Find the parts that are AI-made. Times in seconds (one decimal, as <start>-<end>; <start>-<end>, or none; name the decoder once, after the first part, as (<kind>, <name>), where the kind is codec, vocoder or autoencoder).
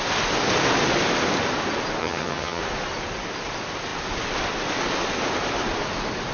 2.0-2.6 (vocoder, HiFi-GAN)